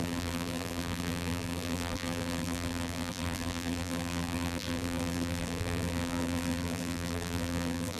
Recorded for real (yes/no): no